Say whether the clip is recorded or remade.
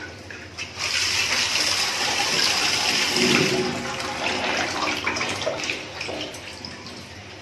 recorded